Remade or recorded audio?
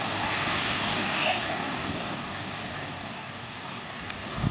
remade